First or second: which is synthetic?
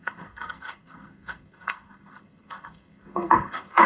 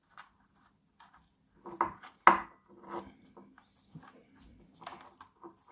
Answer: first